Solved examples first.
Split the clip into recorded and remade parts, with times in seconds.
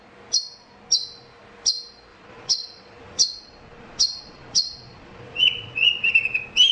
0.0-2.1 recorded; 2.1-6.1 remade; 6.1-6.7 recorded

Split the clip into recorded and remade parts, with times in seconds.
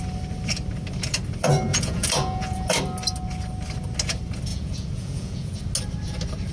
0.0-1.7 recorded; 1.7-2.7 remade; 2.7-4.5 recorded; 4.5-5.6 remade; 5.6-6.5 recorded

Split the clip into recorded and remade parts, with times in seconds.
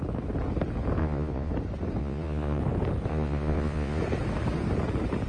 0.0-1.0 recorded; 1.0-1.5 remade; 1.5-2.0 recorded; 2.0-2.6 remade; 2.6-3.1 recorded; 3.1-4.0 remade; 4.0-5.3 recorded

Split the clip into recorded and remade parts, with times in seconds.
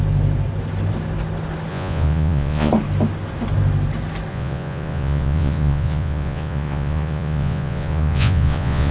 0.0-1.7 recorded; 1.7-2.7 remade; 2.7-4.3 recorded; 4.3-8.9 remade